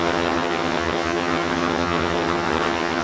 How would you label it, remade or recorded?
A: remade